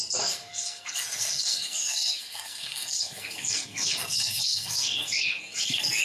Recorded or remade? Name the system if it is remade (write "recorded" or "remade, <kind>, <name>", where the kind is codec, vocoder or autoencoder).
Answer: remade, codec, SNAC